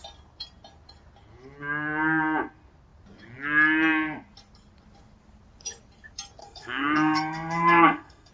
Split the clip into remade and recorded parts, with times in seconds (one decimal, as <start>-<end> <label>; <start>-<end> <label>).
0.0-6.4 recorded; 6.4-8.3 remade